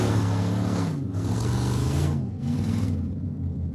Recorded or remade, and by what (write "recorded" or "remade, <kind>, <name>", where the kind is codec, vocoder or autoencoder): remade, codec, SNAC